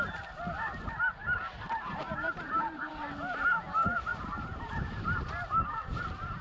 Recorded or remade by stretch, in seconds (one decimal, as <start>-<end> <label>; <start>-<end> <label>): 0.0-1.2 recorded; 1.2-2.9 remade; 2.9-4.1 recorded; 4.1-6.4 remade